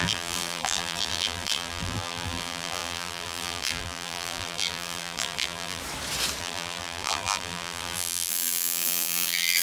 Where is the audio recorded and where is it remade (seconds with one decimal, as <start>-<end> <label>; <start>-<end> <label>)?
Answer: 0.0-5.8 remade; 5.8-6.4 recorded; 6.4-9.6 remade